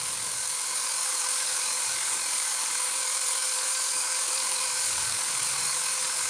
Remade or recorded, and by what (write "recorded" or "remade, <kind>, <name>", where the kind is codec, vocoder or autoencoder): remade, codec, DAC